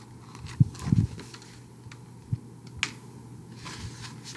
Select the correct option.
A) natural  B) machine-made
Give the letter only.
A